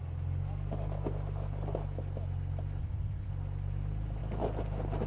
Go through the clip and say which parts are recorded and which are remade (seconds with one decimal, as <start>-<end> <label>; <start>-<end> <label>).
0.0-2.8 recorded; 2.8-3.3 remade; 3.3-5.1 recorded